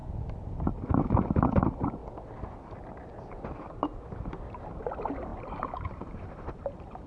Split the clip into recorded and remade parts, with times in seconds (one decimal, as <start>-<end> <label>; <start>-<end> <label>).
0.0-0.5 recorded; 0.5-2.0 remade; 2.0-4.8 recorded; 4.8-7.1 remade